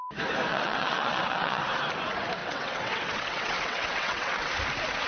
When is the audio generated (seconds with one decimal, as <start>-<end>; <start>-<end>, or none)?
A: 0.5-1.6; 2.4-4.5